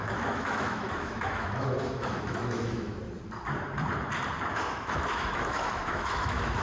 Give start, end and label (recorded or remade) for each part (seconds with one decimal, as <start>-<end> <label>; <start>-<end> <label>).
0.0-3.0 remade; 3.0-4.5 recorded; 4.5-6.6 remade